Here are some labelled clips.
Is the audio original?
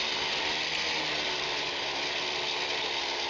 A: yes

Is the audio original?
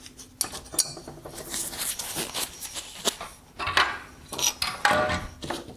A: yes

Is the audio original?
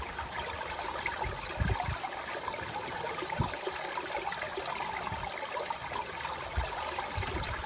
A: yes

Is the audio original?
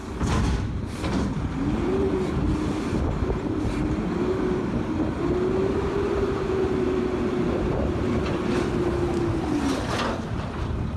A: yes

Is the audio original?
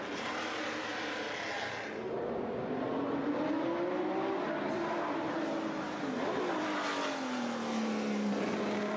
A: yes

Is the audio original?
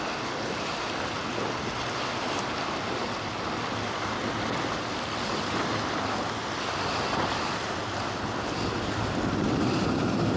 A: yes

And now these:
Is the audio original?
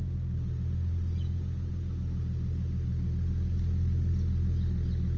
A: yes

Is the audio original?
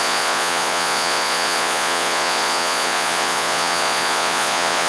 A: no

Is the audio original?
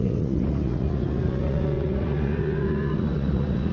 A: no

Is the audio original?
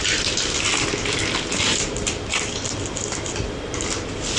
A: yes